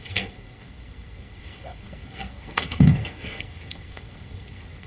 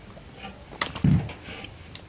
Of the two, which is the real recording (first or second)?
second